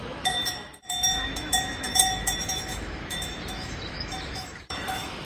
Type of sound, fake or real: fake